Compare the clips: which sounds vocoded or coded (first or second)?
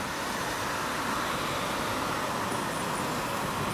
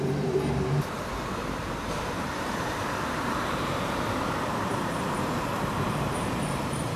second